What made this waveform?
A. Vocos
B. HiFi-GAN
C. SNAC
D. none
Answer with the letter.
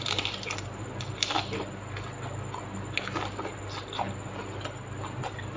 D